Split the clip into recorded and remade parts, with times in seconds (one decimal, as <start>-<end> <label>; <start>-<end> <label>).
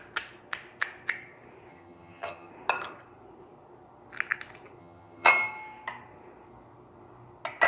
0.0-1.7 recorded; 1.7-2.5 remade; 2.5-4.8 recorded; 4.8-5.3 remade; 5.3-7.7 recorded